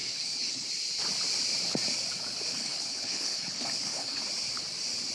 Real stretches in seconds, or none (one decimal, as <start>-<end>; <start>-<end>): 0.7-2.5; 4.2-5.1